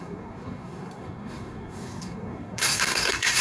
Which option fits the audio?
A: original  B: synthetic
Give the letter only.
B